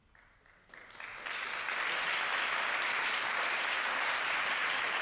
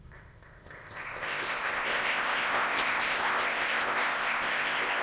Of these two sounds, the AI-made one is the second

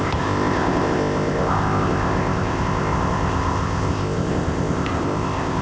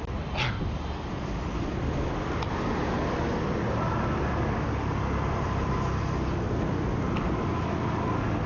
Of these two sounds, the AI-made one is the first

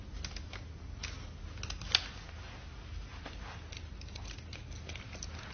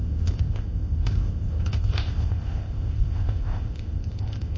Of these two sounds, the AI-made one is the second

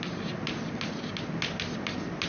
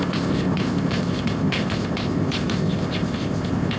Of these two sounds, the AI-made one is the second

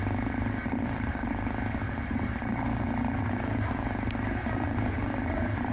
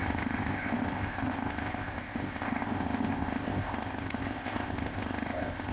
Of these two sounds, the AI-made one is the second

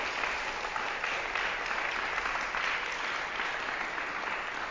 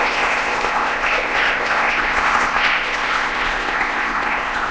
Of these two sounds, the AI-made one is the second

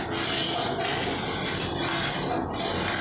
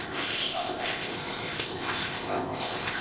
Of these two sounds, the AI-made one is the second